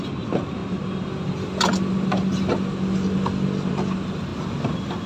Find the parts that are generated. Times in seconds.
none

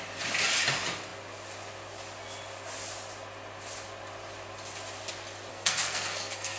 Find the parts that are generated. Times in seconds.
5.5-6.6 (codec, SNAC)

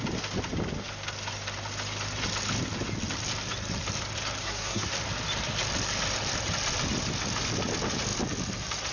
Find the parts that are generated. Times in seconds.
4.4-4.9 (codec, SNAC)

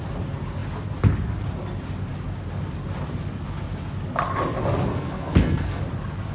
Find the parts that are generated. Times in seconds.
4.9-5.8 (codec, SNAC)

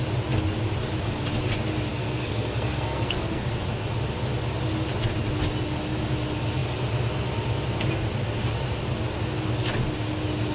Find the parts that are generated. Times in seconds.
1.9-3.5 (codec, SNAC)

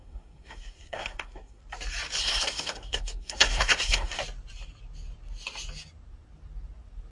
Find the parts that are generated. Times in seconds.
0.0-1.6 (codec, SNAC); 2.2-4.2

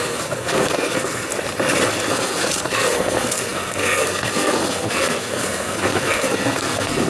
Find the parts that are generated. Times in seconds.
0.0-1.3 (codec, SNAC); 2.1-7.1

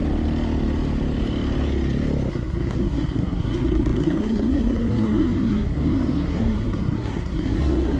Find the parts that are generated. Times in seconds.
2.3-8.0 (codec, SNAC)